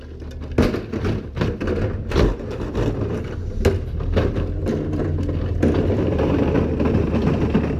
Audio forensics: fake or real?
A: real